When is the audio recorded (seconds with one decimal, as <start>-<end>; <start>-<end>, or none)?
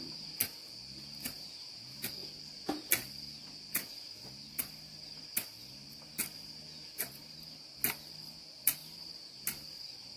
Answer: 0.0-10.2